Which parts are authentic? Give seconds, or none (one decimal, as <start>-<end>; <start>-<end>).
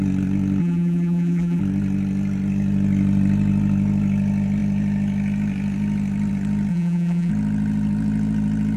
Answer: 0.0-0.6; 1.6-6.7; 7.3-8.8